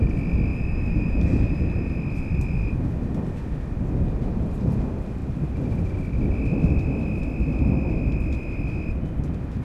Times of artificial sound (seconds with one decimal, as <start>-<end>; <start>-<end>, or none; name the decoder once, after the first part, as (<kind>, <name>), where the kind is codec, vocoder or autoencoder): 0.5-1.9 (vocoder, BigVGAN v2)